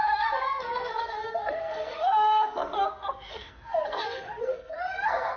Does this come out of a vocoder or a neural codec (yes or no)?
yes